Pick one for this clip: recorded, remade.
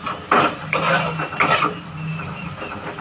recorded